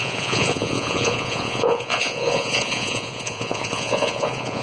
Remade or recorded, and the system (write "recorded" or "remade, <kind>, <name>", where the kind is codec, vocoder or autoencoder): remade, vocoder, Vocos